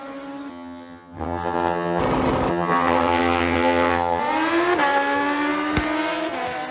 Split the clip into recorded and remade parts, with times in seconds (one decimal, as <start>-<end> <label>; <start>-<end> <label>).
0.0-0.5 recorded; 0.5-2.0 remade; 2.0-2.5 recorded; 2.5-4.2 remade; 4.2-6.7 recorded